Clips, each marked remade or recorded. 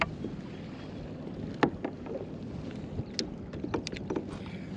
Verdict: recorded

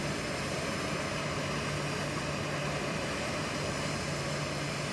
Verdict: recorded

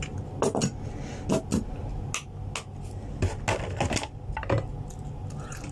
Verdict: recorded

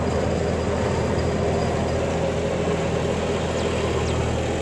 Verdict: recorded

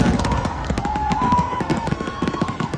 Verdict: remade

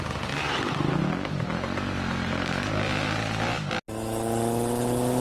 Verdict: recorded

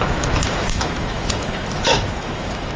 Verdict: remade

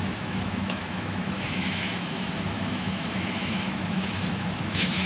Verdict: remade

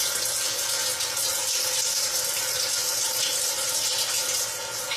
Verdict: recorded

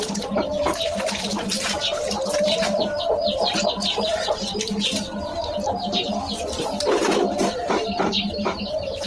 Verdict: recorded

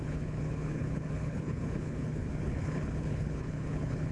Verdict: remade